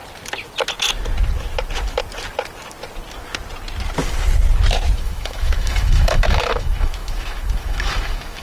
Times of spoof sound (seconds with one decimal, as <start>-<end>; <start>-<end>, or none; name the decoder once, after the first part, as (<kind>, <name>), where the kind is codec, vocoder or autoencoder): 5.0-8.4 (autoencoder, DAC-VAE)